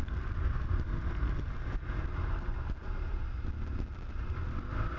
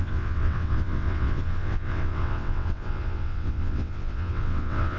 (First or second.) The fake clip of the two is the second